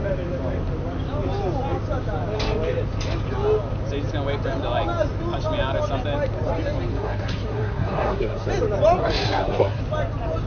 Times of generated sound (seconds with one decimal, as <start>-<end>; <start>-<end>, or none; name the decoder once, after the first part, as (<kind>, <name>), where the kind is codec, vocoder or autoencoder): 6.9-8.5 (codec, SNAC); 9.0-9.8